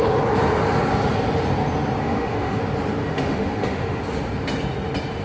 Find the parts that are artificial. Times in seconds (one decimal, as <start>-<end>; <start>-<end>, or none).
2.0-2.6; 3.0-4.0